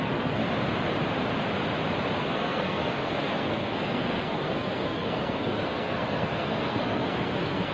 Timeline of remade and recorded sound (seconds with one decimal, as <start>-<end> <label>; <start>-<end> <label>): 0.0-0.4 remade; 0.4-2.2 recorded; 2.2-7.7 remade

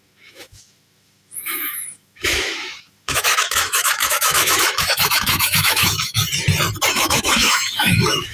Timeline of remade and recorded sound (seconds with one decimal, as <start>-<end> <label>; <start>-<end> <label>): 0.0-6.2 remade; 6.2-6.9 recorded; 6.9-8.3 remade